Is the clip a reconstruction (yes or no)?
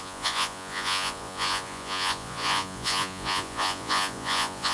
yes